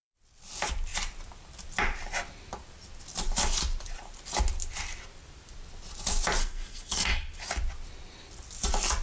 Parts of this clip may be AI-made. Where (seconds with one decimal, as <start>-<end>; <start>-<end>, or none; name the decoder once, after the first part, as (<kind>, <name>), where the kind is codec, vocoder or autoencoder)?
6.4-7.4 (codec, SNAC)

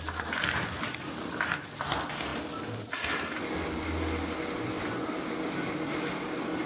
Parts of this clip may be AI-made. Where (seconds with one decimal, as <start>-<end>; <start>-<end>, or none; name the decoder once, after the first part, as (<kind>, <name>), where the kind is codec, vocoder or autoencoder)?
none